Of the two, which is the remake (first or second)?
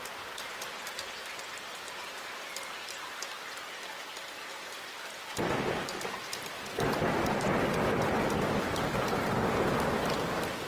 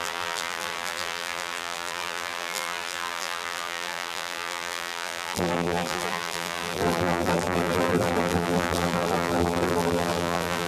second